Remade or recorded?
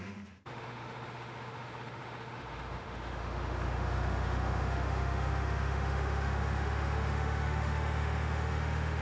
remade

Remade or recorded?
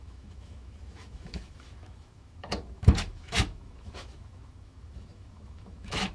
remade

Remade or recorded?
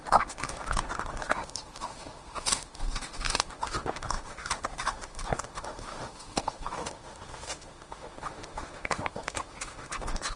remade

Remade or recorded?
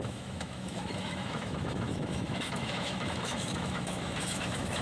remade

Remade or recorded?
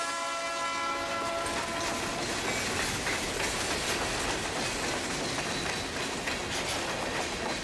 recorded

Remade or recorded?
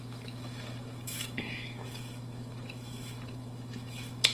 remade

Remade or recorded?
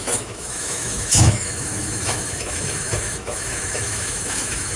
remade